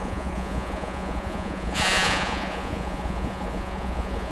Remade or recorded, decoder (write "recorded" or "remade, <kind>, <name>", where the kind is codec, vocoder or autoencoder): remade, vocoder, Vocos